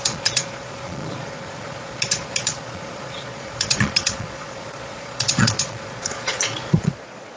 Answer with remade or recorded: remade